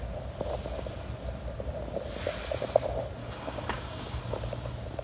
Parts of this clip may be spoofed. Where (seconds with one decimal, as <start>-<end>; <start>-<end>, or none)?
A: 3.2-4.2